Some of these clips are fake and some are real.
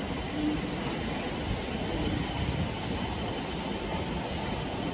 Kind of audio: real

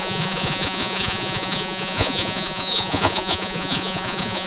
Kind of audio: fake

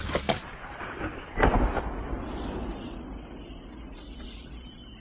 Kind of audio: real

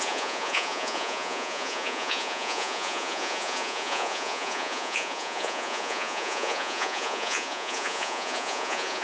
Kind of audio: fake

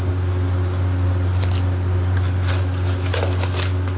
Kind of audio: real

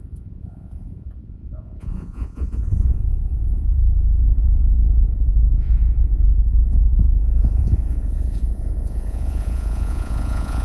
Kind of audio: fake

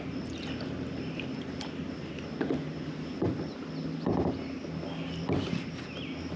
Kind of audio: real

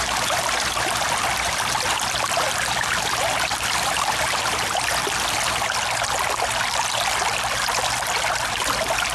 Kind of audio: real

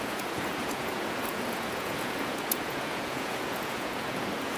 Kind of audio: fake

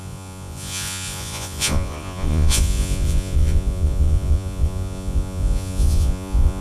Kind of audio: fake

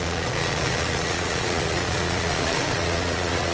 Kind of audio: fake